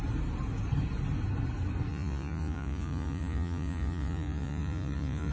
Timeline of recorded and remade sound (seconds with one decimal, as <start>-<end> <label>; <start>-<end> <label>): 0.0-1.9 recorded; 1.9-5.3 remade